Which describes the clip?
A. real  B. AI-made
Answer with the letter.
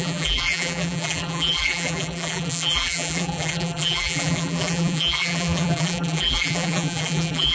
B